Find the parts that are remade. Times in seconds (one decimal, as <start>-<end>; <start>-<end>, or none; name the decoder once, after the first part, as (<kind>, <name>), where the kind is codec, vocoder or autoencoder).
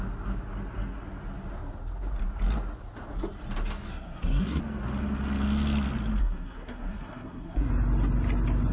3.9-4.6 (codec, SNAC); 6.2-7.7